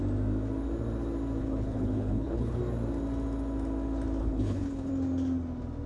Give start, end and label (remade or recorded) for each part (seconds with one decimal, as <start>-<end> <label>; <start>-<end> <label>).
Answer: 0.0-1.4 recorded; 1.4-2.6 remade; 2.6-4.2 recorded; 4.2-4.9 remade; 4.9-5.9 recorded